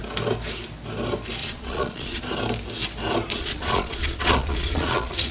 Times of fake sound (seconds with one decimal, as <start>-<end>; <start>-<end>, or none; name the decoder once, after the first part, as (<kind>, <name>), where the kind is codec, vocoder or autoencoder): 1.4-2.2 (vocoder, Vocos); 3.3-5.3